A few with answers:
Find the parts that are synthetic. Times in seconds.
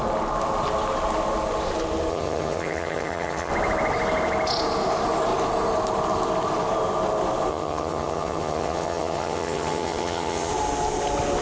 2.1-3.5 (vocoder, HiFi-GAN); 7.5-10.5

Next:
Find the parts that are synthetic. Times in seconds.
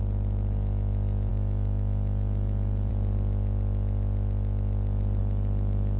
none